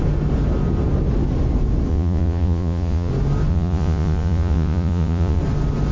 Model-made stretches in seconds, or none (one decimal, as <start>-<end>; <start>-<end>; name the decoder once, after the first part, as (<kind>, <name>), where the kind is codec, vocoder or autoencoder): 1.9-3.1 (vocoder, Vocos); 3.5-5.4